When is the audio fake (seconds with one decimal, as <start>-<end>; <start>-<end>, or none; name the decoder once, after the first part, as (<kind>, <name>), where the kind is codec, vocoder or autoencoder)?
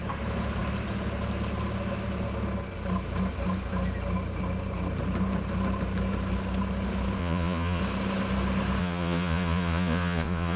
7.2-7.8 (vocoder, Vocos); 8.8-10.6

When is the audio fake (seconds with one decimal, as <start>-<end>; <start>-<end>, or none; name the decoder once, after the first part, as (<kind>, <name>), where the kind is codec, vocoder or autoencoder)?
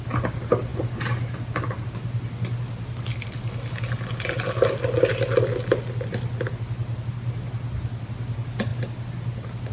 none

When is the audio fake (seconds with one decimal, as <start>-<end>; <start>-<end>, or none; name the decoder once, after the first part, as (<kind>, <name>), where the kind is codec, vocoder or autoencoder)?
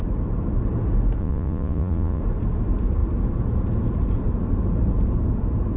1.2-2.2 (vocoder, Vocos)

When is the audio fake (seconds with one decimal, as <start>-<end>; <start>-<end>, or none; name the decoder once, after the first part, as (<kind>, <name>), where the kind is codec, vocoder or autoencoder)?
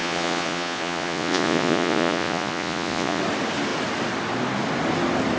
0.0-3.2 (vocoder, Vocos)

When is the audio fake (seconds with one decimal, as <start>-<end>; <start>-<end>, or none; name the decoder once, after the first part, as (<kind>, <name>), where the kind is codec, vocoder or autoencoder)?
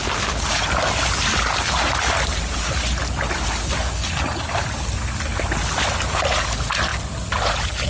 none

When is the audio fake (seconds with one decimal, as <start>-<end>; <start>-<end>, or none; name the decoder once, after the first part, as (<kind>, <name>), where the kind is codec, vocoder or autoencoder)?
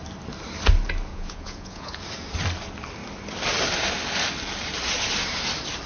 1.1-2.0 (vocoder, Vocos)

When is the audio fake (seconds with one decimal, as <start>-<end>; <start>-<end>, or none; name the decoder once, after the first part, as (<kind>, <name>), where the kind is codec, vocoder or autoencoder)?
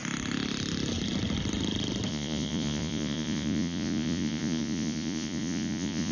2.1-6.1 (vocoder, Vocos)